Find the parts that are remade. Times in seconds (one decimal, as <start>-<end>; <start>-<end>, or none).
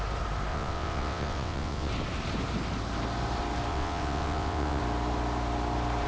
0.5-1.9; 3.7-4.8